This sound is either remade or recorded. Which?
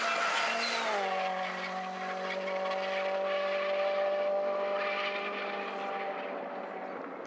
recorded